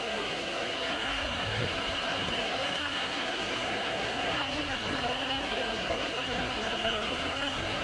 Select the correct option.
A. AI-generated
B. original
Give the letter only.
A